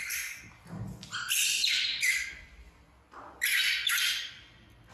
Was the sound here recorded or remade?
remade